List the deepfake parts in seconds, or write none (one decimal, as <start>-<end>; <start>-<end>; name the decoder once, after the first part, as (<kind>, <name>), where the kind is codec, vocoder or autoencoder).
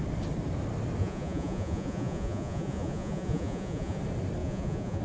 1.0-4.0 (vocoder, Vocos); 4.4-5.0